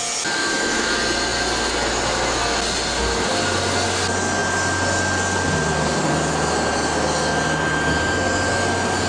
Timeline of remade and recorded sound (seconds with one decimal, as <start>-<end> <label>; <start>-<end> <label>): 0.0-0.4 recorded; 0.4-0.9 remade; 0.9-9.1 recorded